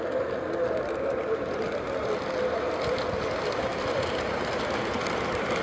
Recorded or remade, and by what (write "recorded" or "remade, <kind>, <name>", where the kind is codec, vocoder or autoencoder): recorded